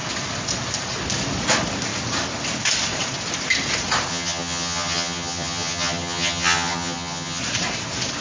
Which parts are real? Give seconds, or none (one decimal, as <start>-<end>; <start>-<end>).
0.0-4.1; 7.4-8.2